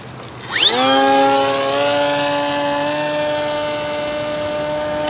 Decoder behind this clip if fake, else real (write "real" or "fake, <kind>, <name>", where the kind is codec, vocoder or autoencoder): real